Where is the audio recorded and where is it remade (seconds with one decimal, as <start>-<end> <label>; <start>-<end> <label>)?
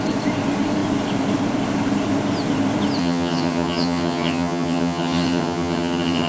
0.0-3.0 recorded; 3.0-6.3 remade